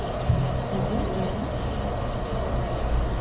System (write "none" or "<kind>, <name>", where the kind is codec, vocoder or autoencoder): none